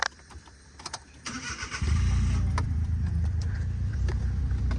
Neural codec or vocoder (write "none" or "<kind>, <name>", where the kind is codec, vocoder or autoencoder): vocoder, BigVGAN v2